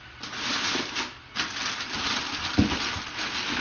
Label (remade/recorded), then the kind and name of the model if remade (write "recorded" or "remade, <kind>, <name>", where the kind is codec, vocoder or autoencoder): recorded